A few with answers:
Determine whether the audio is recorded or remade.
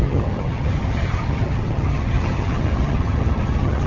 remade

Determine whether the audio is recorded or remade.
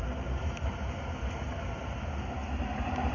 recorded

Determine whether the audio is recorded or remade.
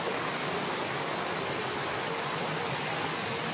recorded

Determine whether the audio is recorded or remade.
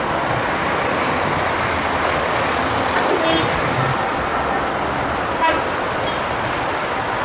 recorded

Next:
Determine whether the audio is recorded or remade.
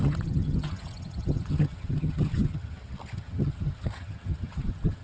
remade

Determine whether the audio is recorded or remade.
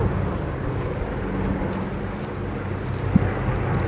recorded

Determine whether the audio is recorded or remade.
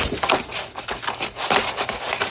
recorded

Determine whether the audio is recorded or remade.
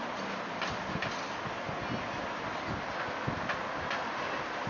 recorded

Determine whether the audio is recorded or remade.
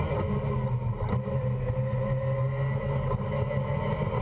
recorded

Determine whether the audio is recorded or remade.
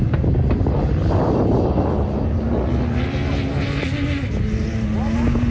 recorded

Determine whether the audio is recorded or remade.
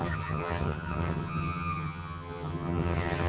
remade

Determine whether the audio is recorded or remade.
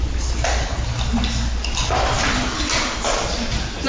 recorded